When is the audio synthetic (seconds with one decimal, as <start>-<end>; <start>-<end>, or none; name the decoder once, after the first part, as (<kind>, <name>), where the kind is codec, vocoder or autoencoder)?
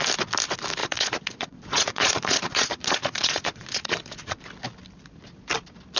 0.8-4.4 (vocoder, Vocos)